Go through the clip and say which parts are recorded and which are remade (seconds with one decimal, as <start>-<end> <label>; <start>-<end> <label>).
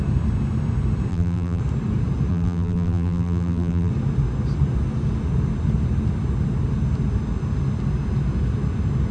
0.0-1.1 recorded; 1.1-1.6 remade; 1.6-2.3 recorded; 2.3-3.9 remade; 3.9-9.1 recorded